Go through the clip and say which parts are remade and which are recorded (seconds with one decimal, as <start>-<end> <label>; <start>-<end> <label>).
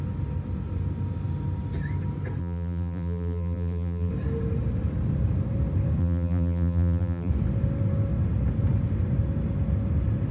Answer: 0.0-2.4 recorded; 2.4-4.1 remade; 4.1-6.0 recorded; 6.0-7.3 remade; 7.3-10.3 recorded